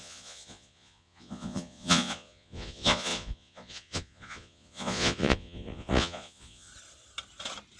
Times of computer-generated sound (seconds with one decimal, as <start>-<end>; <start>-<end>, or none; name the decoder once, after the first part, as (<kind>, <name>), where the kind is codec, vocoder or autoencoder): 0.0-6.7 (vocoder, Vocos)